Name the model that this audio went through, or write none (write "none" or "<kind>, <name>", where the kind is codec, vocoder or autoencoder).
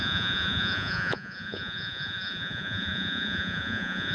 vocoder, Vocos